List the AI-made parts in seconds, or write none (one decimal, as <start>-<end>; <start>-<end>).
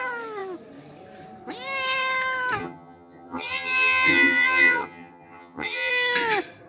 2.6-5.9